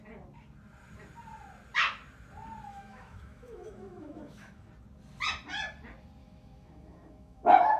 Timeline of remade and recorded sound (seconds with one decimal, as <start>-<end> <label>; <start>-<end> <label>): 0.0-2.7 recorded; 2.7-4.7 remade; 4.7-6.2 recorded; 6.2-7.8 remade